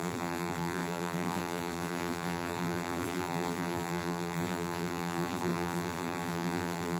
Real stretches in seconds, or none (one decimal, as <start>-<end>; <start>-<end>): none